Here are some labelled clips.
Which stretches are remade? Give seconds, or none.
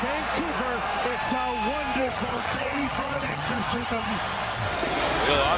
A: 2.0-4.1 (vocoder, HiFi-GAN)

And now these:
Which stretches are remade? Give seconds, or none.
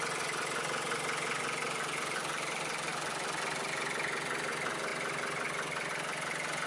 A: none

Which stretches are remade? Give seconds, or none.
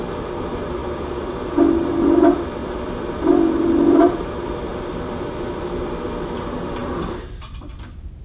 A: 2.6-4.2 (vocoder, BigVGAN v2); 4.7-5.4; 6.8-8.2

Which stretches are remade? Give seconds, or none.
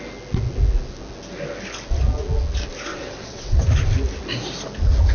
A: 2.9-3.6 (vocoder, WaveNeXt)